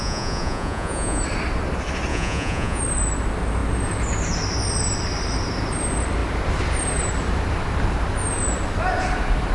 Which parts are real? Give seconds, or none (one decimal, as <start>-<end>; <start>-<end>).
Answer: 1.2-2.1; 2.8-9.5

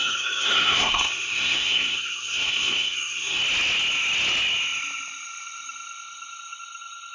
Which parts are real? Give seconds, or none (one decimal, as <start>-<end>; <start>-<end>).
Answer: 3.4-7.1